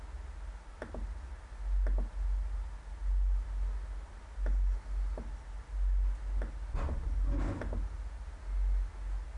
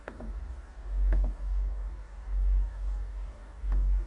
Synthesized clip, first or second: second